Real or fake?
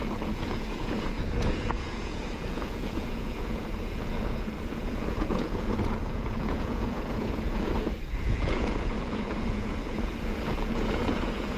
fake